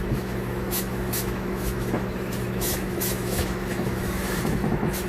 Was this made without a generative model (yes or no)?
no